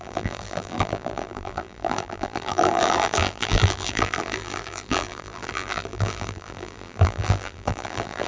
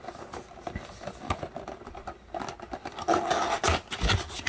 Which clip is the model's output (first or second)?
first